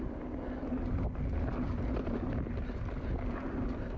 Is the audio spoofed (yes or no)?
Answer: no